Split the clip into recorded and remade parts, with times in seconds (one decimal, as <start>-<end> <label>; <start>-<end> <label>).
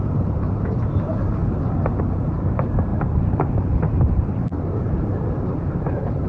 0.0-1.4 remade; 1.4-2.0 recorded; 2.0-6.3 remade